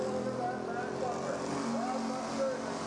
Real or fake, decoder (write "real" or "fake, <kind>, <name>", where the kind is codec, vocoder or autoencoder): real